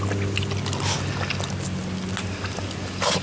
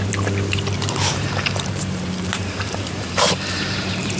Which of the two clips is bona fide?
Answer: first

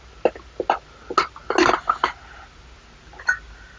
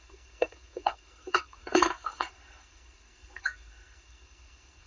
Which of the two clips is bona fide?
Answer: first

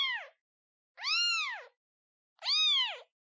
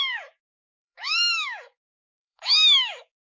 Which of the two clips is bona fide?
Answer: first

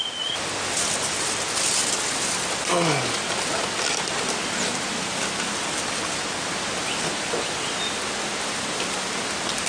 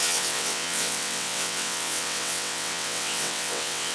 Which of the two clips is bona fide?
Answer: first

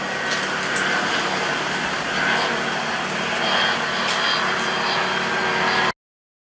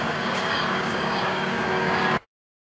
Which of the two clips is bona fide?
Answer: first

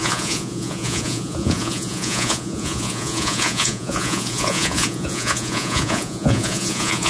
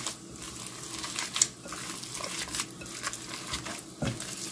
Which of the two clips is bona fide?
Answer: second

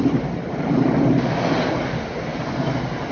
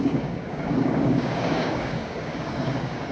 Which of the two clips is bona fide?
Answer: first